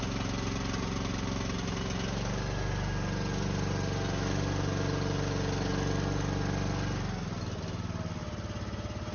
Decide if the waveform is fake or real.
real